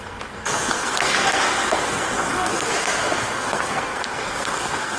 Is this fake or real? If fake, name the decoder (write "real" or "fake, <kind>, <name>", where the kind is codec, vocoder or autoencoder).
fake, codec, SNAC